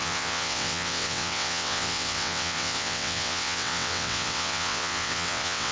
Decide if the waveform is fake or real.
fake